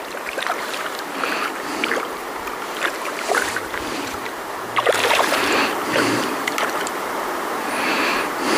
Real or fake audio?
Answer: fake